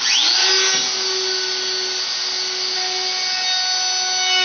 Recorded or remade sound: recorded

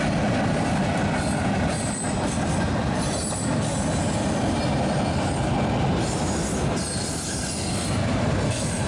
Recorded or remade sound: recorded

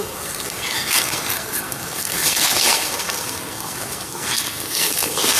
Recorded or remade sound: remade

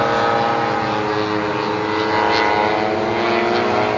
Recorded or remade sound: recorded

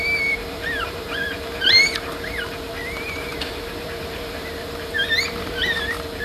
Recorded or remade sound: remade